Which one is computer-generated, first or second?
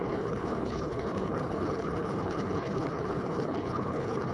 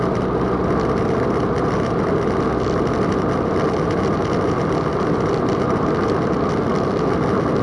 first